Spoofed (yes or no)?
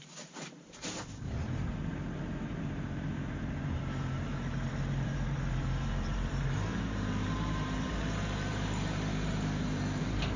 yes